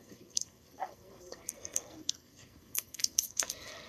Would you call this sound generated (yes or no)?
yes